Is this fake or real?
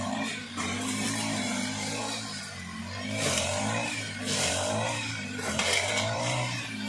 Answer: fake